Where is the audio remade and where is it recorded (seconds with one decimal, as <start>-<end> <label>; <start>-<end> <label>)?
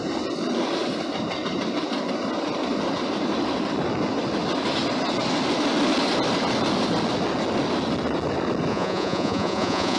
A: 0.0-8.7 recorded; 8.7-10.0 remade